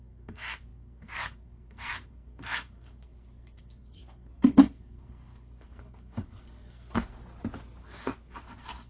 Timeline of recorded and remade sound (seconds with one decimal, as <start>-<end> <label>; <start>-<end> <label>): 0.0-7.2 remade; 7.2-7.8 recorded; 7.8-8.9 remade